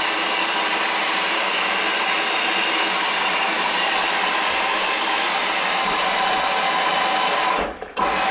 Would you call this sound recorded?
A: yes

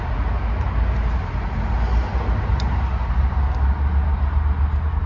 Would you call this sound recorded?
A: yes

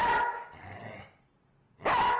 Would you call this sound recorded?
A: yes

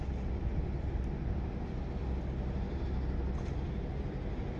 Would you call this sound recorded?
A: yes